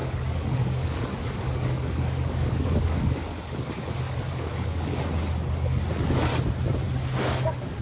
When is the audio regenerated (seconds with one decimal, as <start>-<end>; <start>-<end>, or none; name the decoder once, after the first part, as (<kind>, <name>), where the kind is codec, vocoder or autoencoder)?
0.0-4.9 (codec, DAC); 5.5-6.3; 7.2-7.8

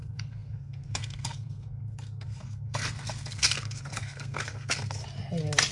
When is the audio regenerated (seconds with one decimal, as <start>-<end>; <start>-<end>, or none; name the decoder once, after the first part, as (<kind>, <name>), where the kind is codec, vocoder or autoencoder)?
0.0-5.0 (codec, SNAC)

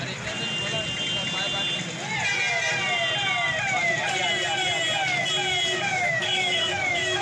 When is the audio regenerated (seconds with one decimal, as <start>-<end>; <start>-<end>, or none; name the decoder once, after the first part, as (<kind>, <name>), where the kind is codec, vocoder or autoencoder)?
5.9-7.2 (autoencoder, DAC-VAE)

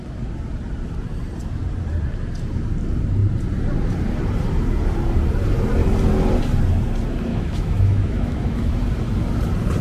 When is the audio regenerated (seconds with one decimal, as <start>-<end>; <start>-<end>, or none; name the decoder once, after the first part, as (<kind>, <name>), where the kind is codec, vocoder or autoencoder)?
7.3-8.7 (autoencoder, DAC-VAE)

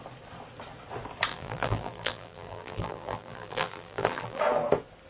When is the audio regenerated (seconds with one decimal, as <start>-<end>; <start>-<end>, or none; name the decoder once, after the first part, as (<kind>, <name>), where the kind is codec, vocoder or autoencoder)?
1.3-4.4 (vocoder, BigVGAN v2)

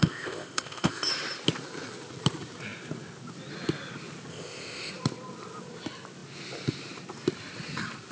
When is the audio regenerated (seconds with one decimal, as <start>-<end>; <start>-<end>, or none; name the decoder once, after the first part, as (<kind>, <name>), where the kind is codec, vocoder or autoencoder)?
0.0-1.1 (codec, ZipCodec); 4.3-4.9